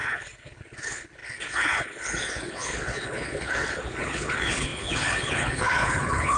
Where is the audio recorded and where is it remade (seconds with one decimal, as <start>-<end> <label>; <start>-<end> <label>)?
0.0-6.4 remade